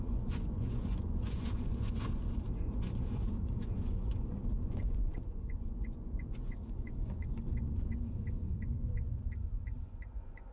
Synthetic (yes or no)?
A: yes